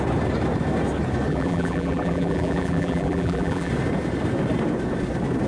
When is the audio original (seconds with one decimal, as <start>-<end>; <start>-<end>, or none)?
0.0-1.3; 3.7-5.5

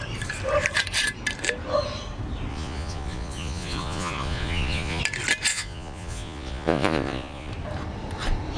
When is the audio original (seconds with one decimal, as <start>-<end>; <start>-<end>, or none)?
0.0-2.5; 5.0-5.5; 7.5-8.6

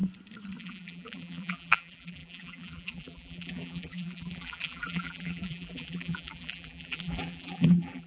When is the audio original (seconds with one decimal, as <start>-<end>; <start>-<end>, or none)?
0.0-0.6

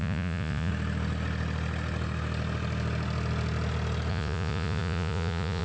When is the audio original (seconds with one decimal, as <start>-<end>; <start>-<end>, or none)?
0.7-4.1

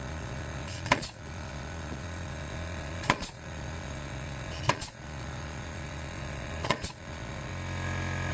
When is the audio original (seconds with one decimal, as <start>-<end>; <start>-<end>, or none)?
7.5-8.3